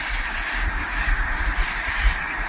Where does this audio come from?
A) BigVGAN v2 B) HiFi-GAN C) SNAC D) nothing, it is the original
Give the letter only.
A